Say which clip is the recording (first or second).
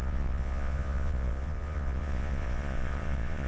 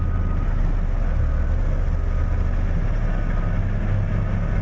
second